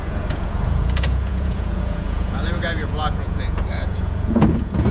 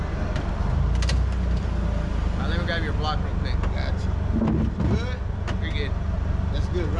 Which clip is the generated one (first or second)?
first